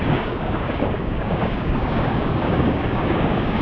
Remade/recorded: remade